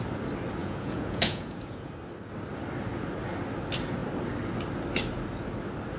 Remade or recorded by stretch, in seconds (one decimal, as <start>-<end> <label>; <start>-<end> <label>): 0.0-0.6 recorded; 0.6-1.9 remade; 1.9-6.0 recorded